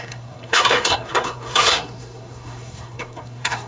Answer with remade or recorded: remade